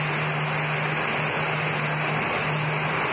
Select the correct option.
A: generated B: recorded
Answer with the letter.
B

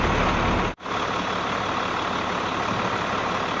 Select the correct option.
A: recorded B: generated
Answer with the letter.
A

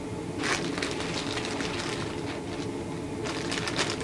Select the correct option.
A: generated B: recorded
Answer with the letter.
B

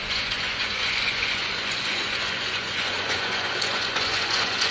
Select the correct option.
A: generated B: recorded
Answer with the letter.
A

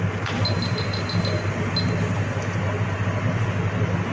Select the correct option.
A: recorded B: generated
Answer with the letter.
A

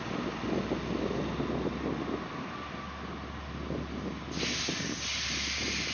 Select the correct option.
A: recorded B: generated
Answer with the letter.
A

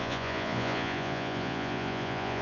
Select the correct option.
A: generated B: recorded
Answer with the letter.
A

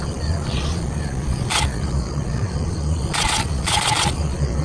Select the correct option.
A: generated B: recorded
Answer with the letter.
A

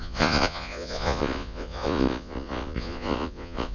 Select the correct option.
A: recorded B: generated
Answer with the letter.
B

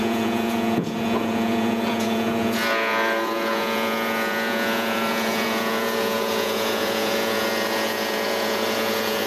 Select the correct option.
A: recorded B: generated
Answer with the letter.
B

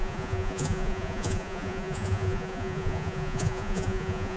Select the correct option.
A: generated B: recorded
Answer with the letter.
A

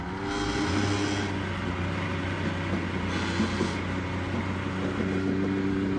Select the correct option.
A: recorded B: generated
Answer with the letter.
A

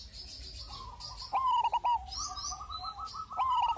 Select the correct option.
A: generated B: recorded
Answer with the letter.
B